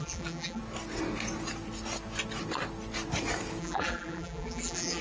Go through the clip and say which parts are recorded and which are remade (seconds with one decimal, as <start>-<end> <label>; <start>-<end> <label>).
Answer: 0.0-0.6 remade; 0.6-3.6 recorded; 3.6-5.0 remade